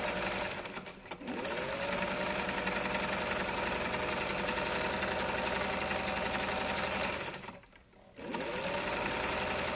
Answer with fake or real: real